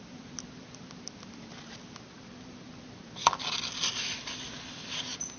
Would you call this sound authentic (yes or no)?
yes